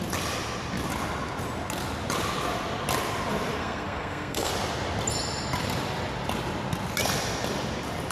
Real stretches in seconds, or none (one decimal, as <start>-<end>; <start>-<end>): 0.0-3.6; 4.5-8.1

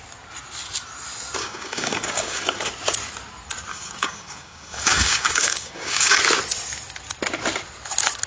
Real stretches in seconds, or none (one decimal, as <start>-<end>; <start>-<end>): 0.0-1.4; 2.7-3.7; 6.2-8.3

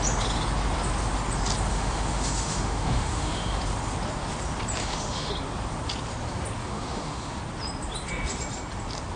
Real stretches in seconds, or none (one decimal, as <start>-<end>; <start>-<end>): 0.0-1.7; 3.6-4.8; 5.3-6.6; 7.4-9.2

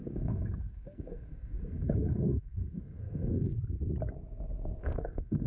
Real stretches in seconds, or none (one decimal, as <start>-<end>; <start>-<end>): 3.5-4.8

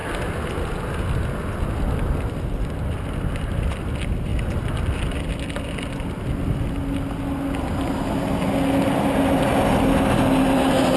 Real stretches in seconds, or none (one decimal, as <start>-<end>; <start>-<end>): 0.0-11.0

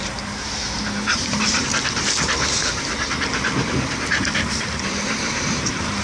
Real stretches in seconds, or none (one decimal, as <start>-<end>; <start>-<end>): 2.6-5.1

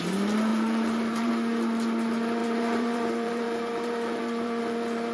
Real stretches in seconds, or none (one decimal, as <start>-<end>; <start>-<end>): 0.0-0.5; 1.3-2.4; 4.6-5.1